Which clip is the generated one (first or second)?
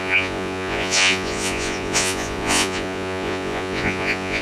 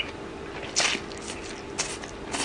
first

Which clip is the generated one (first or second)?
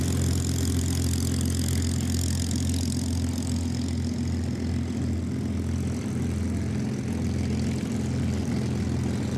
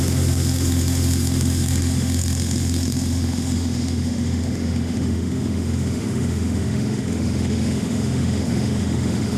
second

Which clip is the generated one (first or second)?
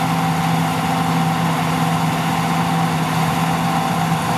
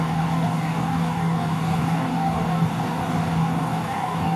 second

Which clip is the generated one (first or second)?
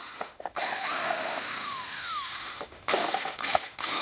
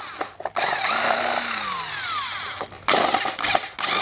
first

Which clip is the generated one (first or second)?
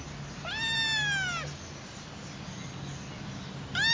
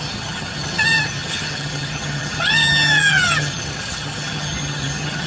second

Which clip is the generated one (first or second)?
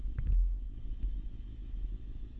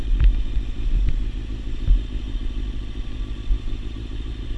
first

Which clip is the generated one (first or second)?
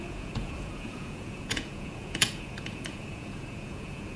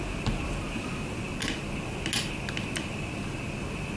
first